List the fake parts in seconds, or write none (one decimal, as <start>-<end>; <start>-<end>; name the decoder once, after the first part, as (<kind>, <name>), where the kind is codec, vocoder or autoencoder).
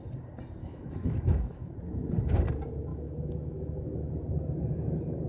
0.6-1.7 (autoencoder, DAC-VAE); 2.9-4.1